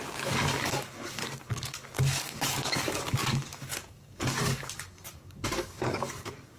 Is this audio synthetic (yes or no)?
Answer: yes